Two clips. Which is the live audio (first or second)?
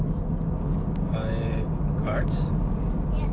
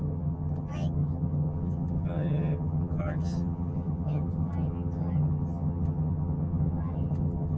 first